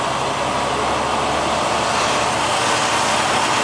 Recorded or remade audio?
recorded